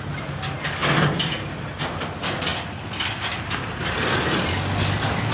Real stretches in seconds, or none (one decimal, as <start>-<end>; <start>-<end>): 0.0-5.3